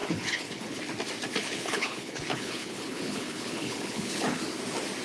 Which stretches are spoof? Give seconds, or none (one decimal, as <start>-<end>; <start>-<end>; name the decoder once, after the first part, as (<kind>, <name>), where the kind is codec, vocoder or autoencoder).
0.0-0.8 (codec, HILCodec); 1.4-4.4